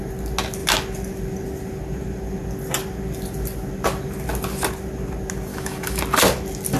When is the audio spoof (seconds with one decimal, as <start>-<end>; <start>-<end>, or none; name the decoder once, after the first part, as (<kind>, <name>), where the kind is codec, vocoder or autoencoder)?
5.5-6.0 (autoencoder, DAC-VAE)